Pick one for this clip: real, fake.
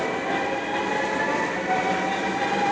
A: real